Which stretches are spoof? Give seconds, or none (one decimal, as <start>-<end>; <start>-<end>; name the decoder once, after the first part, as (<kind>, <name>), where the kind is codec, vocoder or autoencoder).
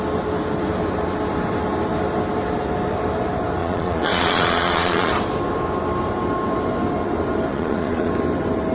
3.6-5.1 (vocoder, Vocos); 7.5-8.1